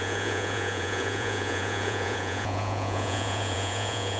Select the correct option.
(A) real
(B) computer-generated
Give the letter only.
B